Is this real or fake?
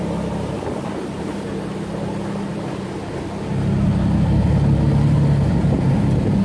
real